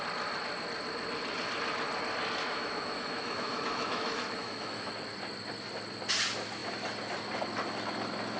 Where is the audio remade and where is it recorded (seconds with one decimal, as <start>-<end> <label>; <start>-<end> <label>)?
0.0-2.4 recorded; 2.4-4.9 remade; 4.9-8.4 recorded